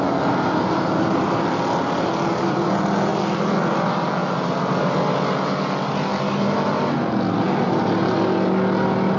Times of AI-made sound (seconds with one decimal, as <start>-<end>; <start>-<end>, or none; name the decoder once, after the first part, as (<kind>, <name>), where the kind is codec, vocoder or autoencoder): none